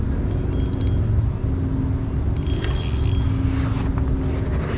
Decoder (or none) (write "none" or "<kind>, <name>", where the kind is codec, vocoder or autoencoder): none